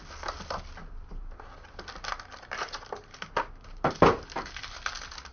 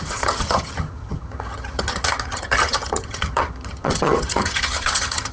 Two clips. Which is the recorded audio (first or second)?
first